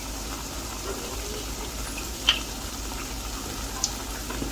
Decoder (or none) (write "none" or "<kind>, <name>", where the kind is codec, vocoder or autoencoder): vocoder, BigVGAN v2